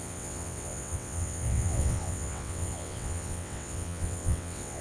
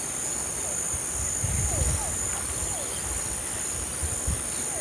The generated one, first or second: first